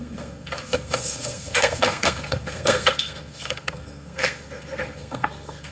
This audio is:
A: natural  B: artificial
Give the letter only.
B